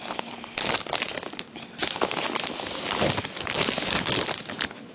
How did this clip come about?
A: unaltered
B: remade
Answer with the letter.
A